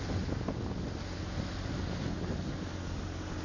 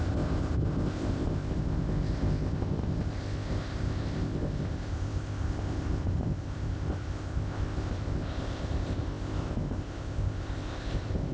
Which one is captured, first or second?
first